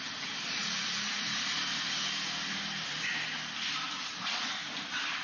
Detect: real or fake fake